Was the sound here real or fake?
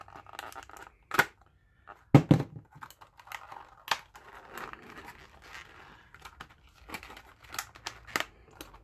real